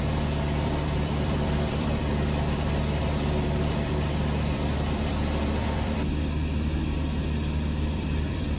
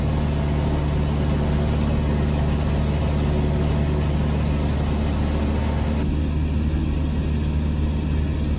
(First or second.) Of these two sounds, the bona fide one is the second